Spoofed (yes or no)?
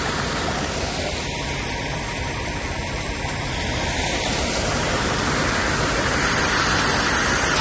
no